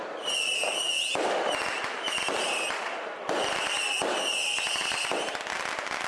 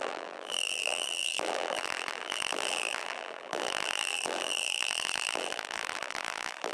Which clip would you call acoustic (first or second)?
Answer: first